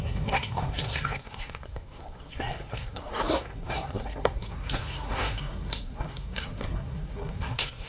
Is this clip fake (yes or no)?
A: yes